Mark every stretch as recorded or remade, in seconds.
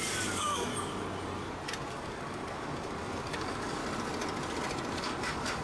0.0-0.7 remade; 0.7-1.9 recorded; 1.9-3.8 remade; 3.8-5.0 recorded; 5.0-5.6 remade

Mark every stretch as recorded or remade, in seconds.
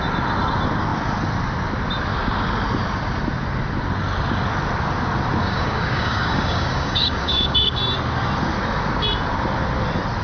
0.0-5.4 recorded; 5.4-7.8 remade; 7.8-10.2 recorded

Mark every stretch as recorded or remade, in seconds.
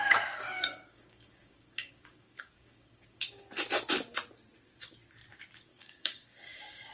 0.0-0.5 recorded; 0.5-3.5 remade; 3.5-5.7 recorded; 5.7-6.9 remade